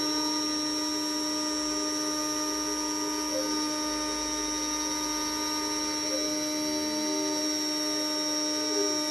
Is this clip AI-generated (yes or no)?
no